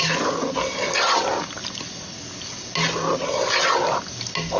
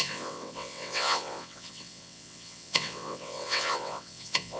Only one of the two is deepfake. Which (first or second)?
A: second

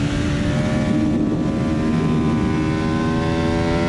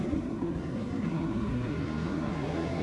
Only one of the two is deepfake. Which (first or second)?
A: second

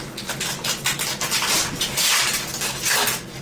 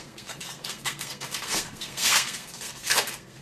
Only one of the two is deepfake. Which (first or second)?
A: second